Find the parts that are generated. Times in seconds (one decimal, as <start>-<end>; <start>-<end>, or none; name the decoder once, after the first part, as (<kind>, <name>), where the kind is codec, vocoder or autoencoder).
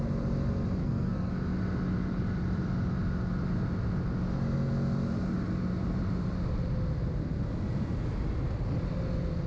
0.8-1.3 (codec, SNAC)